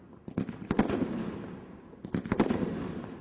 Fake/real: real